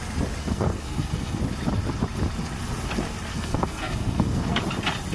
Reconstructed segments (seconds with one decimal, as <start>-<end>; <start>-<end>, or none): 0.4-1.4; 3.3-4.6